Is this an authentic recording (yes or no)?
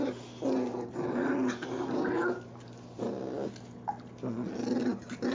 yes